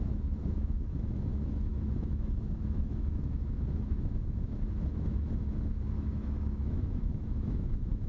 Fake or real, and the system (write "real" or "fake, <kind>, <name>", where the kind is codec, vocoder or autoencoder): fake, autoencoder, DAC-VAE